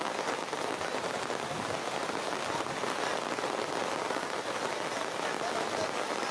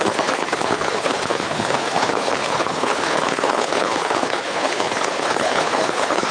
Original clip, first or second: first